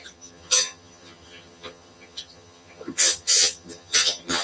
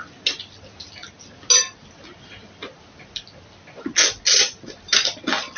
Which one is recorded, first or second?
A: second